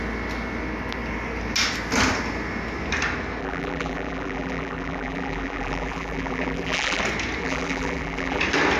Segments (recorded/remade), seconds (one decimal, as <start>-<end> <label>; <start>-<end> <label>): 0.0-3.4 recorded; 3.4-7.0 remade; 7.0-7.4 recorded; 7.4-8.4 remade; 8.4-8.8 recorded